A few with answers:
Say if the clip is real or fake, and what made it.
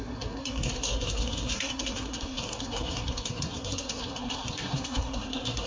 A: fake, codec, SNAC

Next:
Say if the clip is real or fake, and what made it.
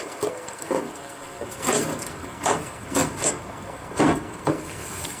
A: fake, codec, SNAC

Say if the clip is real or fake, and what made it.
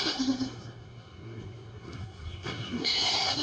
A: fake, codec, SNAC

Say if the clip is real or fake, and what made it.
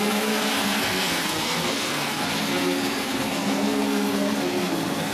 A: fake, codec, SNAC